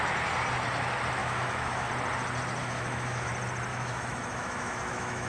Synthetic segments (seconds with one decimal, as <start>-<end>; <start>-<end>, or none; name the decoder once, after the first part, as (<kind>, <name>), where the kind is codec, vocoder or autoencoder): 1.2-1.9 (autoencoder, DAC-VAE); 2.6-3.3; 3.7-5.3